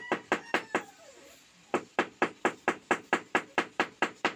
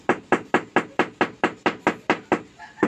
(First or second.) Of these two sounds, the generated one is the first